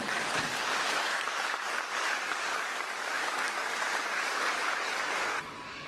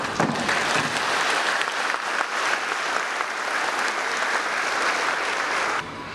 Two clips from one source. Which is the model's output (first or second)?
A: first